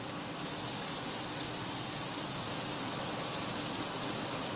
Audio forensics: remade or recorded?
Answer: recorded